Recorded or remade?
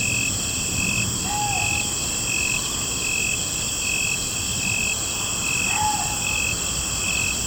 recorded